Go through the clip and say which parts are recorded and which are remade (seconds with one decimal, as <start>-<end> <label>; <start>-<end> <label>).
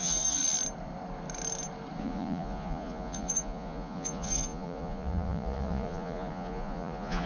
0.0-0.4 remade; 0.4-2.0 recorded; 2.0-7.3 remade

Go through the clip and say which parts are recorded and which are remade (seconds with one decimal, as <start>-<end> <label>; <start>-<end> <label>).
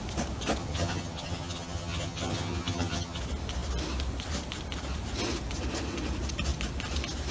0.0-0.6 recorded; 0.6-3.2 remade; 3.2-7.3 recorded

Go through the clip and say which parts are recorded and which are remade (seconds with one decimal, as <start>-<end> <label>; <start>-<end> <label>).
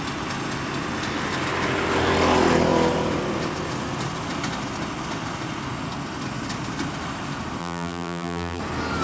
0.0-7.6 recorded; 7.6-8.6 remade; 8.6-9.0 recorded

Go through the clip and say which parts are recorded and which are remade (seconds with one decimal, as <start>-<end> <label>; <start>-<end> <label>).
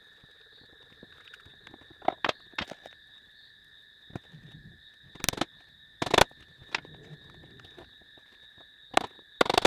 0.0-9.7 recorded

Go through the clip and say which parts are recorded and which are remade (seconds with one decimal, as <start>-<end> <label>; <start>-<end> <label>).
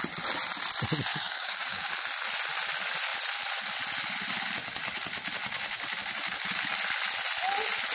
0.0-1.1 recorded; 1.1-1.9 remade; 1.9-7.9 recorded